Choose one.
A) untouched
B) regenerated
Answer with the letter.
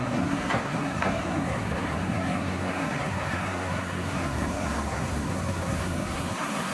B